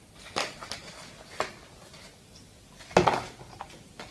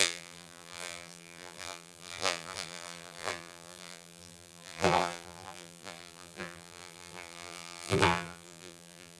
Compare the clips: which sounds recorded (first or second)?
first